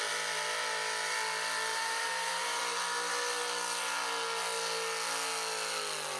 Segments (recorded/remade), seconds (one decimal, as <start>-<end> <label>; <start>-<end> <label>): 0.0-1.7 recorded; 1.7-2.6 remade; 2.6-6.2 recorded